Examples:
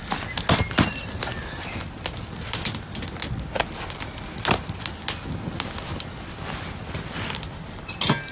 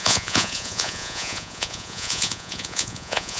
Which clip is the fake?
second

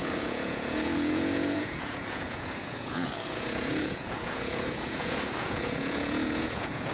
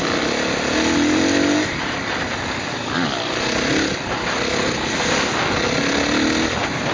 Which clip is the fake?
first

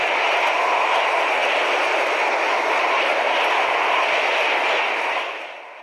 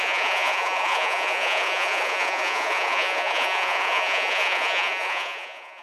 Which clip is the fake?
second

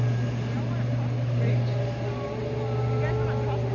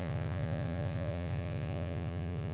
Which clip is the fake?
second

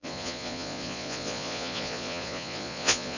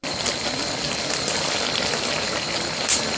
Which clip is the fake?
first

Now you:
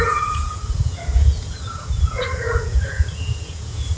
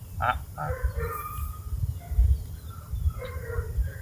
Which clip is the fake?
first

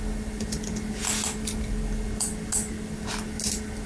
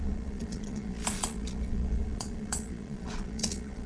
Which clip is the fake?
second